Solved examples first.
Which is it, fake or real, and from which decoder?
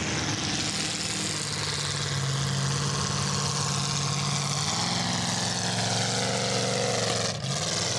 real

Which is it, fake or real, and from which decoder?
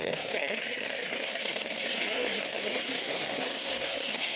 fake, codec, SNAC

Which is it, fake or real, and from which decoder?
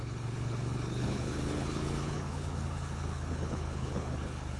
fake, codec, HILCodec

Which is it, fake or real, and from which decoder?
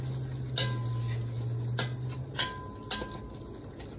real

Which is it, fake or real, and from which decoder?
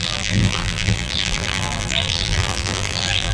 fake, vocoder, BigVGAN v2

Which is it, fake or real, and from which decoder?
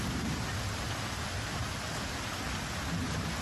real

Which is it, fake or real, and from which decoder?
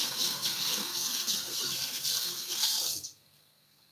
fake, codec, SNAC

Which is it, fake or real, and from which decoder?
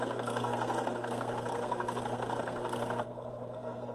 fake, codec, SNAC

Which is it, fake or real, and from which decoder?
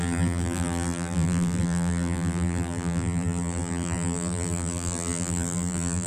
fake, vocoder, BigVGAN v2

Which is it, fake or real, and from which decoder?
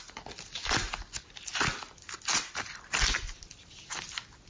real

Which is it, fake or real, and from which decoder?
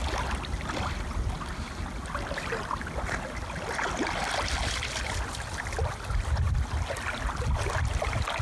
real